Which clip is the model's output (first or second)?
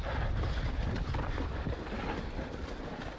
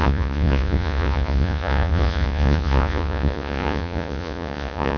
second